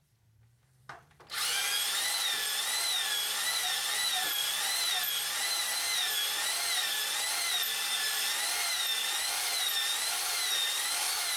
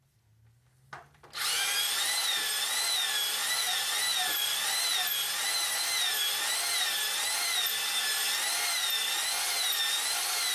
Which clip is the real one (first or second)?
second